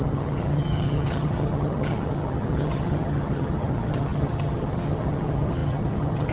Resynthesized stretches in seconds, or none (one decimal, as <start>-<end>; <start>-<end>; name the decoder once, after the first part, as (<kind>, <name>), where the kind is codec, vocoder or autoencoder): 0.0-6.3 (vocoder, HiFi-GAN)